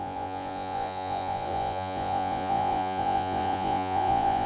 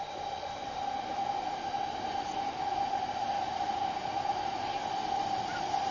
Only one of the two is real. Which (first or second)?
second